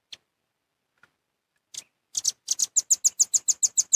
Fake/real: real